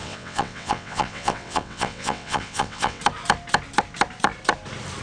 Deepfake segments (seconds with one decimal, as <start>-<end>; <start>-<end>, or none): 0.0-3.0